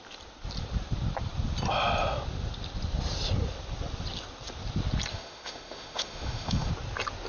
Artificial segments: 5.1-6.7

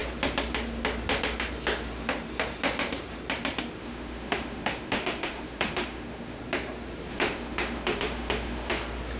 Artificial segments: 3.8-6.4; 7.1-8.7

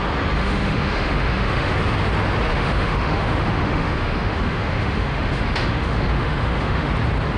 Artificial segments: 0.4-1.7; 2.5-6.9

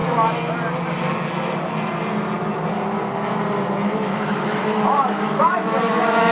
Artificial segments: 3.8-6.3

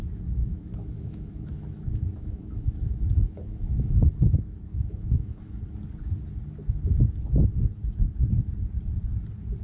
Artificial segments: 0.4-5.6